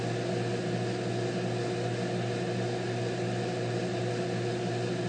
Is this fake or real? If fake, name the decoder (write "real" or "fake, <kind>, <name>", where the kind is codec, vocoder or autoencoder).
real